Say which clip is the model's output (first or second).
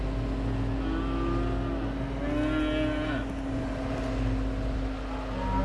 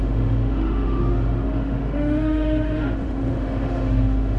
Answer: second